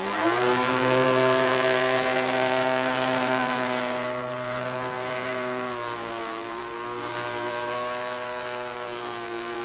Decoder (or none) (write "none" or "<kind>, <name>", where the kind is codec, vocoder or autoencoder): vocoder, BigVGAN v2